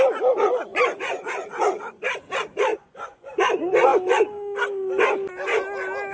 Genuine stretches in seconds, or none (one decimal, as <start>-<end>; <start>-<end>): 0.0-0.7; 1.3-2.7; 3.3-6.1